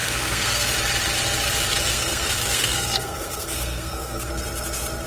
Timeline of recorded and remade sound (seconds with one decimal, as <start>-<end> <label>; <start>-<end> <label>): 0.0-0.7 remade; 0.7-1.9 recorded; 1.9-4.3 remade; 4.3-5.1 recorded